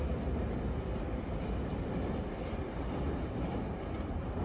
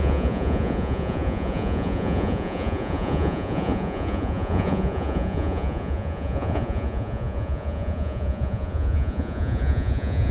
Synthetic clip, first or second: second